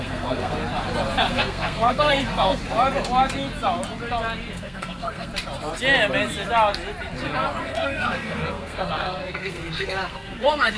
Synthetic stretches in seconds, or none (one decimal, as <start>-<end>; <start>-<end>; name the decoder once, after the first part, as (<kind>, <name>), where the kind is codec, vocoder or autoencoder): 0.0-0.6 (codec, SNAC); 1.3-2.6; 4.5-5.3; 7.6-10.8